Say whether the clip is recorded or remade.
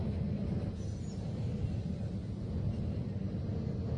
recorded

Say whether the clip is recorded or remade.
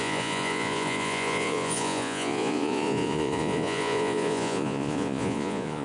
remade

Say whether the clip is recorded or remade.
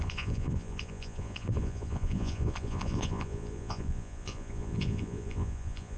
remade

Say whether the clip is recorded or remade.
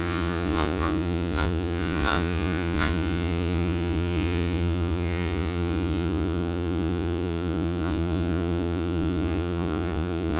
remade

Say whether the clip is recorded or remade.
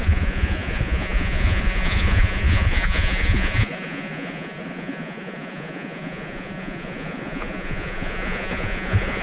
remade